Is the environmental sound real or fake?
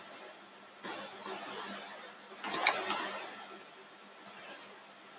real